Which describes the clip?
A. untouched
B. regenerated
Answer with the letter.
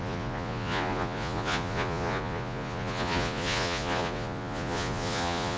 B